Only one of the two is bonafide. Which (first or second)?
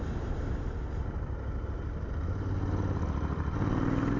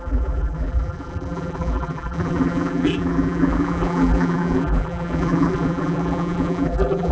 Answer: first